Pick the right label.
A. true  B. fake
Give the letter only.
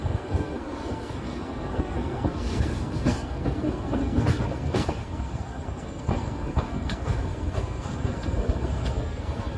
B